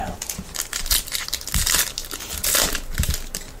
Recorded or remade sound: recorded